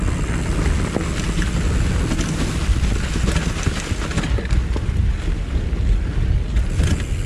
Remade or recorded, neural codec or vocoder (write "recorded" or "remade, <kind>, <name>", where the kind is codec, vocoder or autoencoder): recorded